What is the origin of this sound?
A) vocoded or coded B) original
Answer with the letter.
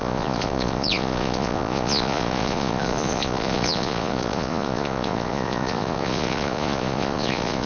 A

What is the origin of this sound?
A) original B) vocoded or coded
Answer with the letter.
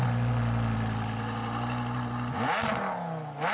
A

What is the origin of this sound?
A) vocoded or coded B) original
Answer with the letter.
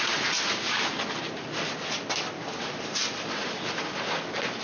B